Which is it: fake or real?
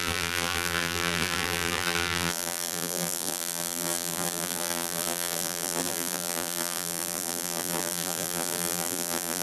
fake